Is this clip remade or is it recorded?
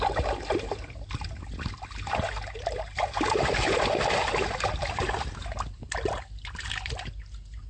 recorded